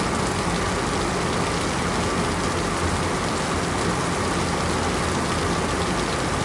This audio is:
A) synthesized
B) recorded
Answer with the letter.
B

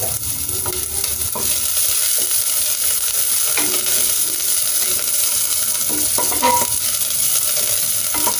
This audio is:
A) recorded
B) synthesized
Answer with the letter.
A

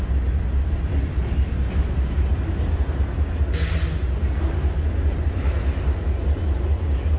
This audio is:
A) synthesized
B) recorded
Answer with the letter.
B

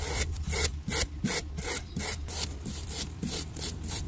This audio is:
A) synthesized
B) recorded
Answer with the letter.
B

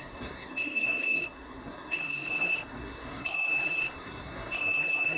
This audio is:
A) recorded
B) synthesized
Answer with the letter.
B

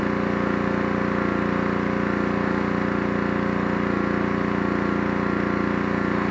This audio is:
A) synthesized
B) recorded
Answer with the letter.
B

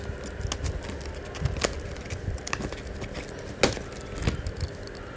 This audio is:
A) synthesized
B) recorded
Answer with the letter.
B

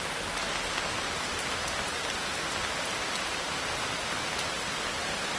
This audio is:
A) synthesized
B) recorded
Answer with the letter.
B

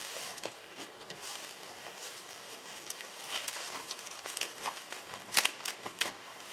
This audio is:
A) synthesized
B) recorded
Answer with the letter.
A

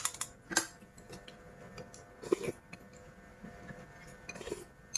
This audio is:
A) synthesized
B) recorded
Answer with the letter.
B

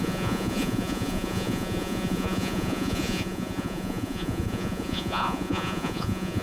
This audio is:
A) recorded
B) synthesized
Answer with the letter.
B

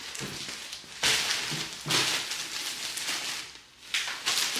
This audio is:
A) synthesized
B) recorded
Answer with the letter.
B